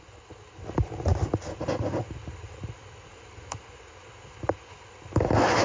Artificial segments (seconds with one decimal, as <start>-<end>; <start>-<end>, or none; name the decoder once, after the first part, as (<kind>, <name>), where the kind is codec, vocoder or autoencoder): 1.1-1.9 (vocoder, BigVGAN v2)